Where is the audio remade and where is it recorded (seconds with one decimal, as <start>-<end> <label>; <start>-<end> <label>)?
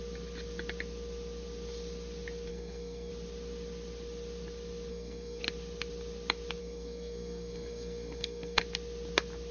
0.0-2.5 recorded; 2.5-3.1 remade; 3.1-4.9 recorded; 4.9-5.4 remade; 5.4-6.6 recorded; 6.6-8.6 remade; 8.6-9.5 recorded